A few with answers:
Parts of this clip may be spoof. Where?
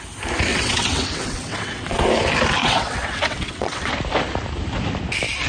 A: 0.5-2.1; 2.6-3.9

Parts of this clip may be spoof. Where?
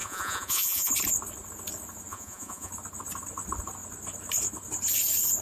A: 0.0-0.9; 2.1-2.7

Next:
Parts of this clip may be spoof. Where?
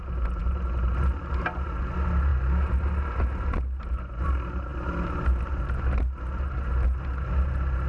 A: none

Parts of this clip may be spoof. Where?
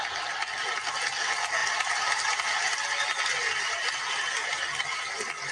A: 1.6-2.2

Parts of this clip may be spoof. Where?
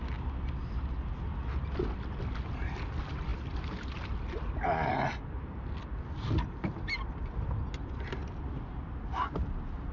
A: none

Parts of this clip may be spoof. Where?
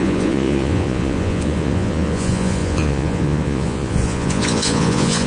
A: 0.0-5.3